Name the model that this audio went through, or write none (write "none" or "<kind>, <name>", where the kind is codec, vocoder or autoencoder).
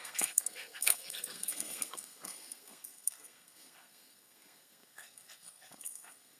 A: codec, SNAC